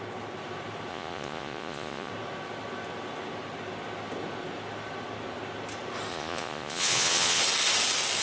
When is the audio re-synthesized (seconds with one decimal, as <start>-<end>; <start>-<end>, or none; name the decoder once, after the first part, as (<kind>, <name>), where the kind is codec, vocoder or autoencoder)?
0.9-2.1 (vocoder, Vocos); 6.1-7.4